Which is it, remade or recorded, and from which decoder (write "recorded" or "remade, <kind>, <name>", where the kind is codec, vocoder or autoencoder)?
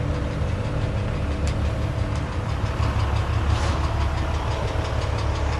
recorded